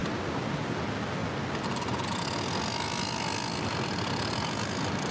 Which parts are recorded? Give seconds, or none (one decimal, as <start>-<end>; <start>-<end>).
0.0-5.1